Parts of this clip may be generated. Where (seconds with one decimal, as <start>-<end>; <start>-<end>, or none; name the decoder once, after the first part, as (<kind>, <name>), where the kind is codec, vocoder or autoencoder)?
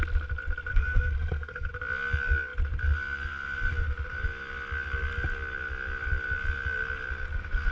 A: 0.7-1.7 (codec, SNAC)